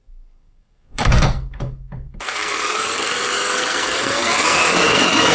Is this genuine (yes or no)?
no